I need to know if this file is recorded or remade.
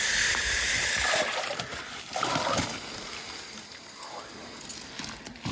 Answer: recorded